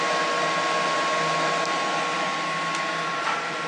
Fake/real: real